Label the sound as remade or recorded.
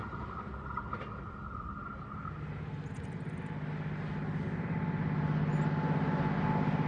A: recorded